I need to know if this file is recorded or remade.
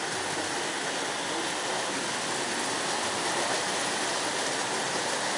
recorded